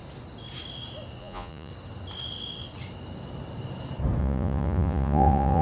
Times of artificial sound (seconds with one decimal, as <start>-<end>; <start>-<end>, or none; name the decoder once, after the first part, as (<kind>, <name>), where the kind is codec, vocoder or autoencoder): 1.2-1.7 (vocoder, Vocos); 4.2-5.6